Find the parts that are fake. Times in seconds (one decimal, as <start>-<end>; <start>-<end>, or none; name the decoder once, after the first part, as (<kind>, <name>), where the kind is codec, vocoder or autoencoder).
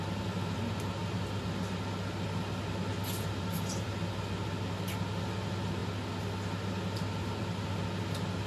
none